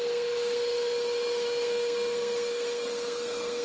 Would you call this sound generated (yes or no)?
yes